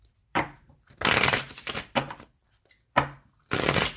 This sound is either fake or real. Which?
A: fake